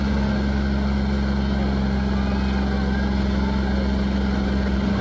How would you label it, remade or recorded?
recorded